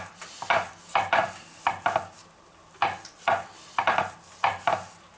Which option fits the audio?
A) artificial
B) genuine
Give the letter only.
B